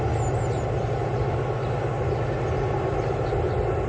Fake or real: real